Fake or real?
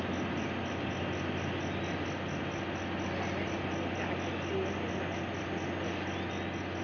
real